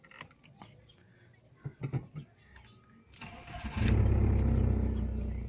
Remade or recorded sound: recorded